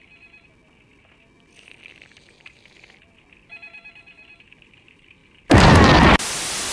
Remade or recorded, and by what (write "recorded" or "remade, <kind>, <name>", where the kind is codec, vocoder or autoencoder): recorded